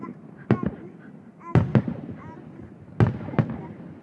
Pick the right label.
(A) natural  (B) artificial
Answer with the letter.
A